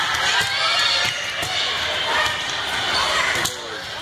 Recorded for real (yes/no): yes